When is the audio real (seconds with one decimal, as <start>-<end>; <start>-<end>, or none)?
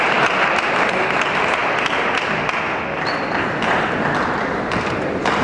0.0-5.4